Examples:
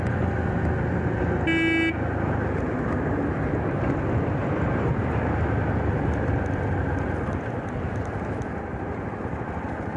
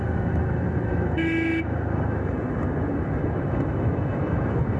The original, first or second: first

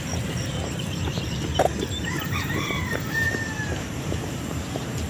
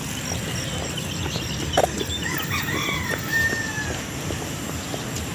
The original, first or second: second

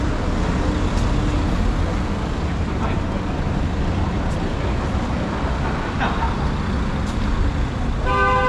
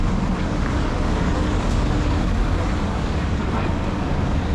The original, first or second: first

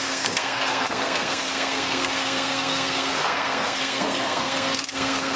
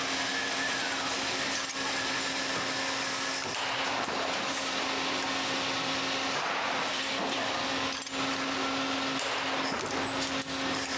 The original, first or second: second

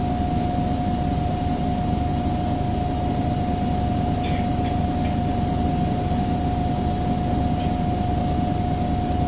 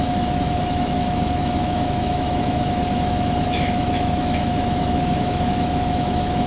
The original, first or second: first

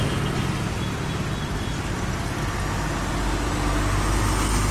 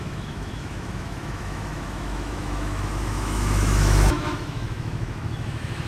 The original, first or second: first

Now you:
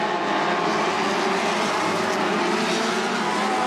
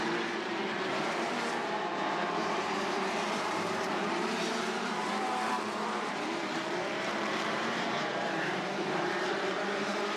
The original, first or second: first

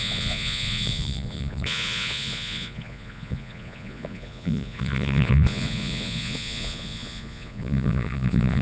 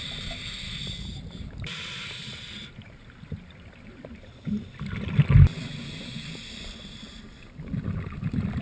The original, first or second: second